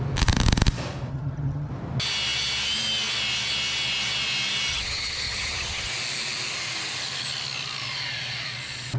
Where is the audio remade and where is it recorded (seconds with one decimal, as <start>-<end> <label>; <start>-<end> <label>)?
0.0-1.1 recorded; 1.1-1.7 remade; 1.7-4.7 recorded; 4.7-5.9 remade; 5.9-9.0 recorded